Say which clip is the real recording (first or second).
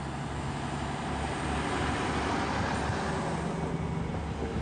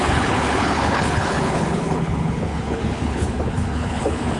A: first